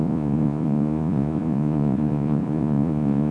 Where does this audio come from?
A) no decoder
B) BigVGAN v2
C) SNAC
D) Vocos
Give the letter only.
D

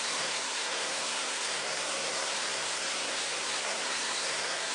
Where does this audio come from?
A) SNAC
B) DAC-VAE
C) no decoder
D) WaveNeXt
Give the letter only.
A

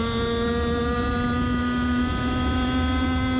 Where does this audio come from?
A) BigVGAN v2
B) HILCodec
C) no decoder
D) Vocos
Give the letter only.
C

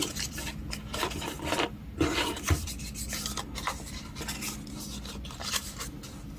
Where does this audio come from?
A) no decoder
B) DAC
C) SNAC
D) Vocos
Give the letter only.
A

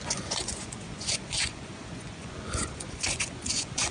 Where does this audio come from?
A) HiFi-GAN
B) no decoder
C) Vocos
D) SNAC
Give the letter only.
C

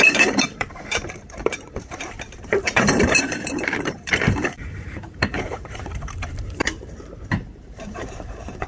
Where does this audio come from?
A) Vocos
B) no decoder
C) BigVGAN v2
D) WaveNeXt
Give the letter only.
C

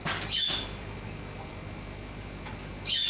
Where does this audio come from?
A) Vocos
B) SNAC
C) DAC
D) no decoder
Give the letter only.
D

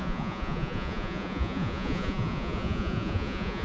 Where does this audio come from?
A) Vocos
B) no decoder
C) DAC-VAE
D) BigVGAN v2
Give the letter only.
A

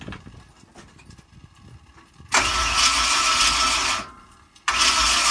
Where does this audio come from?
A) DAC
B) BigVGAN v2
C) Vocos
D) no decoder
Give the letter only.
D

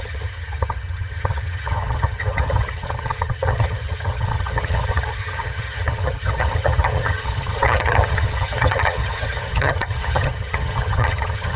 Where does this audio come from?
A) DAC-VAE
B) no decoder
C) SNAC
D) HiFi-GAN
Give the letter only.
D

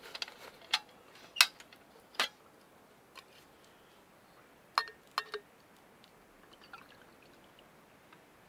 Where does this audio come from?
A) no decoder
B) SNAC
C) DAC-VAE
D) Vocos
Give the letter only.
A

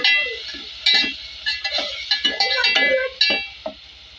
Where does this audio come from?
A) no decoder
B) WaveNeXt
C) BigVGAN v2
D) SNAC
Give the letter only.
A